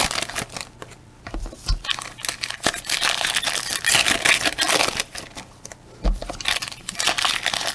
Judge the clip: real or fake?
real